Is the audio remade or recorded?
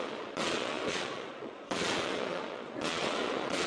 remade